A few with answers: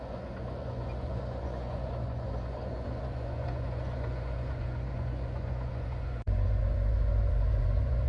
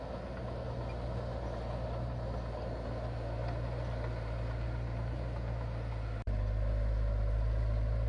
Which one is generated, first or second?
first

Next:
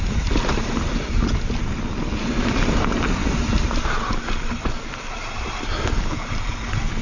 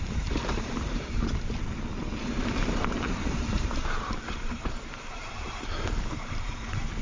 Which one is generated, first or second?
second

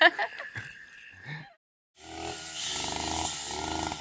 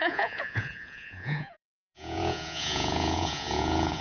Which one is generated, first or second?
second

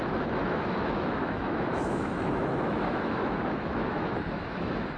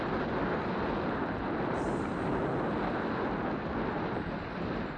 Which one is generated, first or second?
first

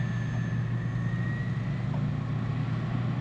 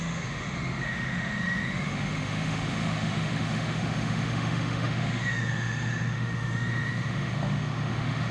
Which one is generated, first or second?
second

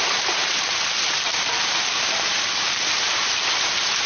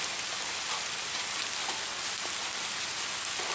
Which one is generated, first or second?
first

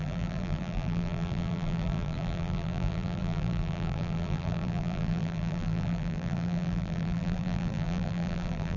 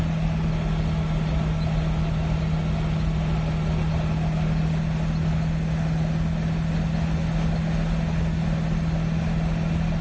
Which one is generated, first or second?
first